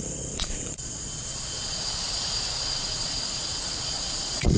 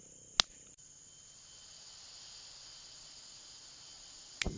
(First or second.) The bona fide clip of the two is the second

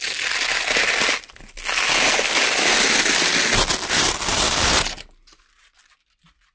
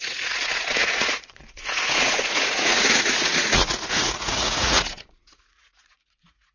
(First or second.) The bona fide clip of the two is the first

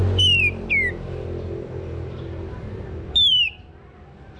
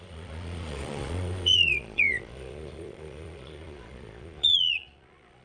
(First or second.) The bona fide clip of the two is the first